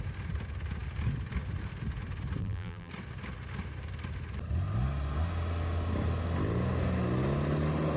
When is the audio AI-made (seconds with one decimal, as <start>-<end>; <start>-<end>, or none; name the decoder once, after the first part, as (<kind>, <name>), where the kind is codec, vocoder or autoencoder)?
2.4-2.9 (vocoder, BigVGAN v2)